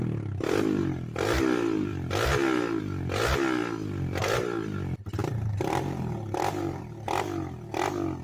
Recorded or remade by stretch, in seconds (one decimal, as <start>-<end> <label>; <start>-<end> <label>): 0.0-5.2 recorded; 5.2-6.8 remade; 6.8-8.2 recorded